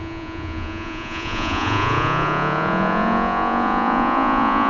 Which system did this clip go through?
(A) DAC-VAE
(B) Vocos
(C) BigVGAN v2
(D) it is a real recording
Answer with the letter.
B